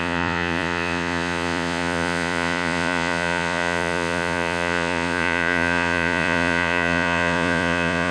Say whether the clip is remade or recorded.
remade